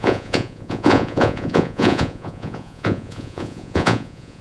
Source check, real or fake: fake